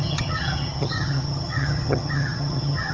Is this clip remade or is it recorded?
remade